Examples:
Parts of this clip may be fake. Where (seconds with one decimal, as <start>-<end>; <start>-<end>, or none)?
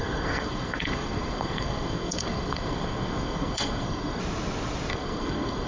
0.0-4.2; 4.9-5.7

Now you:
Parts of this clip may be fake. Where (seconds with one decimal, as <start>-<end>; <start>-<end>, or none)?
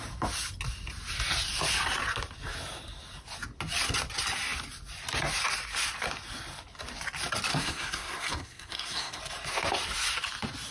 7.5-9.2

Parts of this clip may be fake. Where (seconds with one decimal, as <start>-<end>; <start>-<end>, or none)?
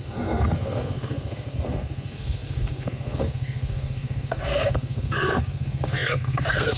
0.0-6.8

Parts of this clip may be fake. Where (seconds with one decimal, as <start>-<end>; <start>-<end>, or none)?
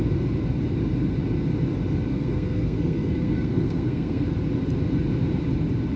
2.1-4.2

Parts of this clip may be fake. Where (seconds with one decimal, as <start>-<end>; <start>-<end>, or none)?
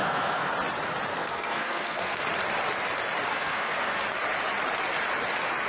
0.0-0.5; 1.1-2.2; 3.3-4.0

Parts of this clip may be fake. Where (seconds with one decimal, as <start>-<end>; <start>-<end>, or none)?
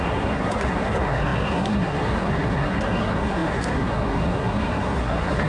0.0-5.5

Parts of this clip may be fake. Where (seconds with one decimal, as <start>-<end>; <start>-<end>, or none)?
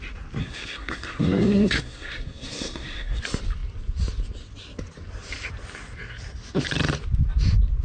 0.4-3.2